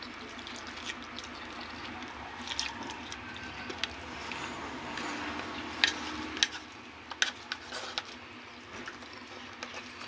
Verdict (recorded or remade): recorded